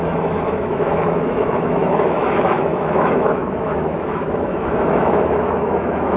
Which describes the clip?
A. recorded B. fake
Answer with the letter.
B